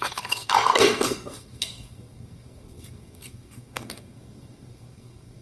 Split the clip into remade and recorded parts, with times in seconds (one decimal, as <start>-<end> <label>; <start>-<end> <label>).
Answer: 0.0-5.4 remade